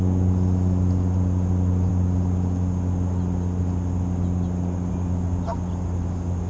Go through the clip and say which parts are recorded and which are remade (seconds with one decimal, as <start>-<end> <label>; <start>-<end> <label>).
0.0-6.5 recorded